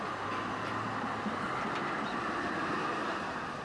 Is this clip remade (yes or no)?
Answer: no